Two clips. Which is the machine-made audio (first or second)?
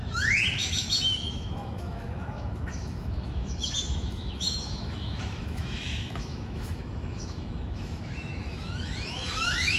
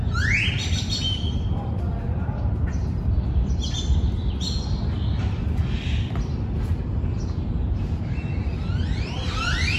first